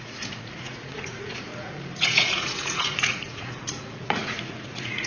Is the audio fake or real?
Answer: fake